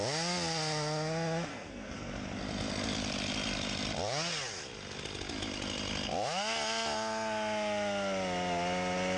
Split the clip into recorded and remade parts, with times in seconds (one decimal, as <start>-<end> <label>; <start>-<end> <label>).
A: 0.0-1.5 recorded; 1.5-2.1 remade; 2.1-9.2 recorded